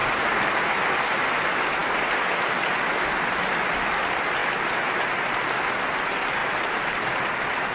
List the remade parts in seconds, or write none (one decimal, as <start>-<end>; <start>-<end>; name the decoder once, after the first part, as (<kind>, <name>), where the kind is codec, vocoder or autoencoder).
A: 0.0-0.9 (vocoder, BigVGAN v2); 6.4-7.3